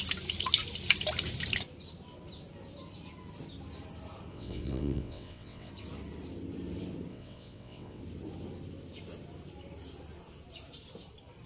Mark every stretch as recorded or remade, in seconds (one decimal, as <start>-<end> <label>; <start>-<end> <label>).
0.0-4.3 recorded; 4.3-5.7 remade; 5.7-7.1 recorded; 7.1-8.0 remade; 8.0-11.5 recorded